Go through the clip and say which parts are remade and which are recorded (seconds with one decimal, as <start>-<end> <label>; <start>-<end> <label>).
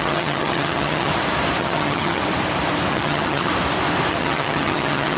0.0-1.1 remade; 1.1-1.6 recorded; 1.6-2.2 remade; 2.2-2.9 recorded; 2.9-3.5 remade; 3.5-4.1 recorded; 4.1-5.2 remade